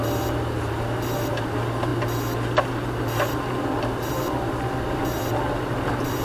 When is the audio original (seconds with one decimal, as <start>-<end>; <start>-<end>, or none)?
0.0-6.2